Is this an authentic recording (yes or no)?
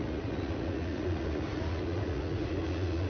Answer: no